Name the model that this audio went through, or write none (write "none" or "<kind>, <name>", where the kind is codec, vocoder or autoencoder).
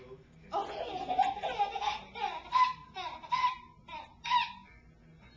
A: none